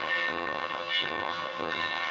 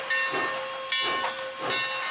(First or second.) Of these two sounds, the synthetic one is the first